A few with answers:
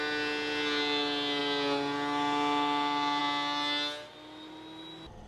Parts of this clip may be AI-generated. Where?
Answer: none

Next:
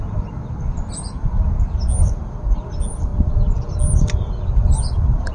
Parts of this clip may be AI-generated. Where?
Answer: none

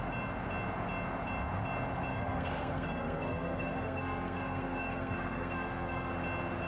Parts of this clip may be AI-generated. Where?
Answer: 2.1-6.1 (codec, SNAC)